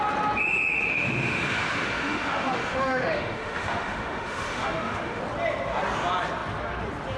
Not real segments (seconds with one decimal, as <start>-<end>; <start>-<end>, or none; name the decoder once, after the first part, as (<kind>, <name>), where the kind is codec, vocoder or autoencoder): 0.9-5.2 (autoencoder, DAC-VAE)